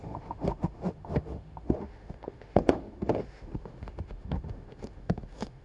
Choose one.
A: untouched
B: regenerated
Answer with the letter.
B